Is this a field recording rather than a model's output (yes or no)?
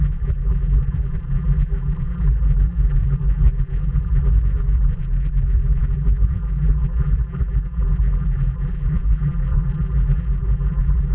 no